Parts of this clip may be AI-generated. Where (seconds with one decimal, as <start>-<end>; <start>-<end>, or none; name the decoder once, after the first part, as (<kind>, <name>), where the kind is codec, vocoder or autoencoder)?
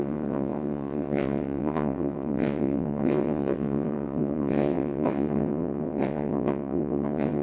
0.0-7.4 (vocoder, WaveNeXt)